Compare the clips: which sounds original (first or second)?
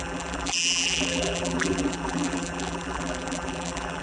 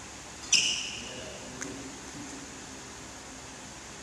second